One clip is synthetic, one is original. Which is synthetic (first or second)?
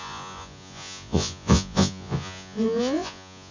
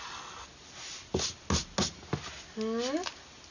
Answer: first